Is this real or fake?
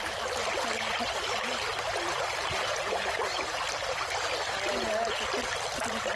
real